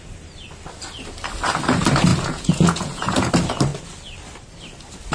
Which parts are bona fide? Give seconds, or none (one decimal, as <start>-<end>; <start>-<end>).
0.0-2.1; 3.3-5.1